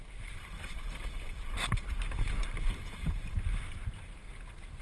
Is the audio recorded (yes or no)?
yes